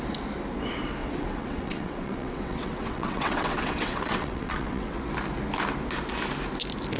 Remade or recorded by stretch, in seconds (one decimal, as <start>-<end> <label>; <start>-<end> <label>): 0.0-1.0 recorded; 1.0-5.0 remade; 5.0-7.0 recorded